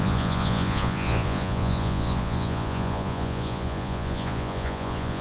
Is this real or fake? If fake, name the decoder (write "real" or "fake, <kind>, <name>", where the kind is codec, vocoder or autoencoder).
fake, vocoder, Vocos